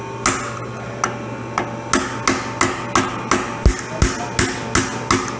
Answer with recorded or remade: recorded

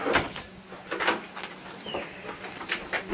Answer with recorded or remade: recorded